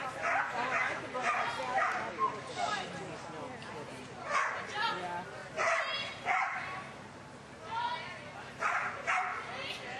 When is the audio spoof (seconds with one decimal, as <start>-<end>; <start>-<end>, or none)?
none